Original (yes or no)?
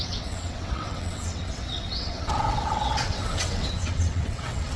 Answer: no